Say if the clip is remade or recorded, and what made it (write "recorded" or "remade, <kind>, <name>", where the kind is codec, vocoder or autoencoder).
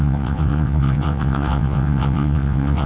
remade, vocoder, WaveNeXt